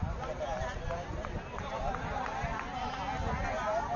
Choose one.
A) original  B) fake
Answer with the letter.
A